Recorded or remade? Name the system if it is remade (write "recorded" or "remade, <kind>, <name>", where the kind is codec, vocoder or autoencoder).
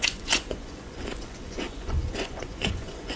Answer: remade, vocoder, Vocos